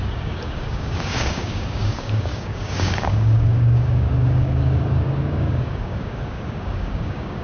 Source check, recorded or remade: remade